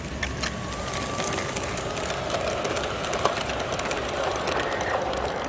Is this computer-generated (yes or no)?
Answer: no